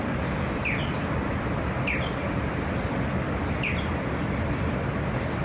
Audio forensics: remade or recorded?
recorded